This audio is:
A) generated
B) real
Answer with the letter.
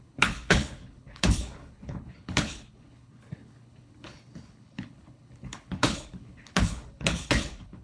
A